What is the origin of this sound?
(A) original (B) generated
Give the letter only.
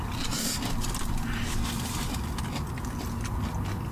A